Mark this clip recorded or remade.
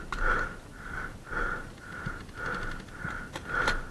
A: recorded